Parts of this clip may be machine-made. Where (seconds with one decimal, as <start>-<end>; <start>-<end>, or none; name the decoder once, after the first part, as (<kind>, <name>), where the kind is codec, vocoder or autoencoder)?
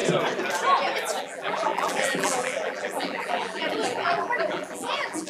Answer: 1.2-5.3 (vocoder, BigVGAN v2)